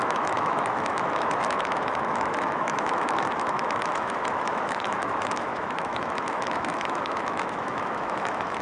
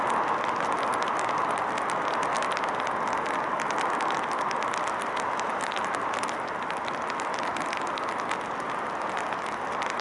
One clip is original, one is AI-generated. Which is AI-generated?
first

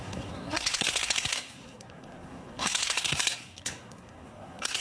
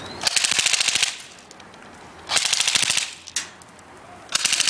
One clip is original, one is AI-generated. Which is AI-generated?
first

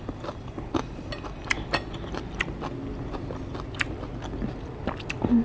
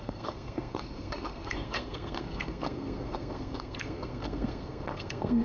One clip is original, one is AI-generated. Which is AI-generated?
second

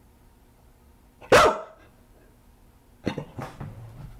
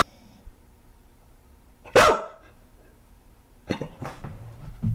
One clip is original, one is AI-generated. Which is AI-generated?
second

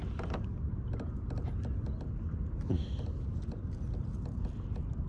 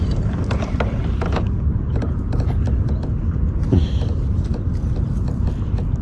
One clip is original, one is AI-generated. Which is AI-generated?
second